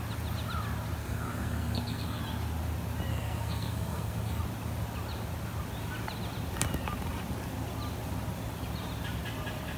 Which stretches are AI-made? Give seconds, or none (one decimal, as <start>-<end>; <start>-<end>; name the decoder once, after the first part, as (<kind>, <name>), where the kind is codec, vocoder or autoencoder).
1.0-2.2 (codec, SNAC); 3.1-4.4